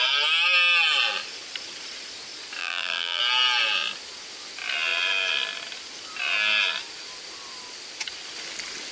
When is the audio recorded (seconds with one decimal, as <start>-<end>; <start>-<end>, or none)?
0.0-2.6; 3.2-8.9